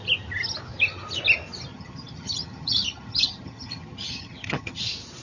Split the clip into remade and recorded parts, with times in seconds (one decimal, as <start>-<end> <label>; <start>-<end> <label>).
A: 0.0-1.7 recorded; 1.7-4.8 remade; 4.8-5.2 recorded